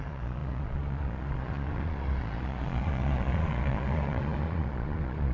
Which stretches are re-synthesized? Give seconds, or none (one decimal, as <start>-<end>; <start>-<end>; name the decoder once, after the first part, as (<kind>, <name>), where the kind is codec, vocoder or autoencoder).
0.0-5.3 (vocoder, Vocos)